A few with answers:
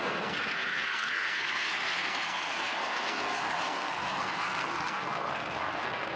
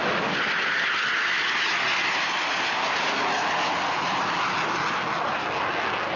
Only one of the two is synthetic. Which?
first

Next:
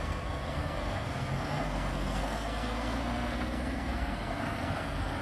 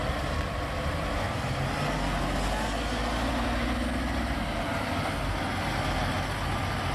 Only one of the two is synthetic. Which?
first